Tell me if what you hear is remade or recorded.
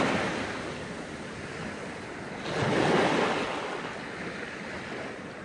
recorded